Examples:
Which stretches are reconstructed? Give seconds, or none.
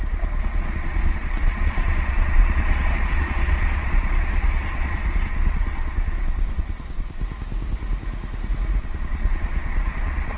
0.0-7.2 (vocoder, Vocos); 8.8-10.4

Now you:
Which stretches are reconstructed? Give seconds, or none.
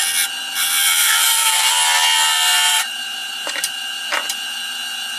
1.0-1.7 (vocoder, BigVGAN v2); 2.7-4.0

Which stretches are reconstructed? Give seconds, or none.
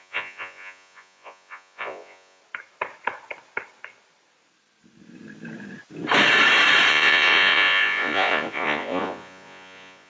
0.0-2.4 (vocoder, Vocos); 6.9-10.1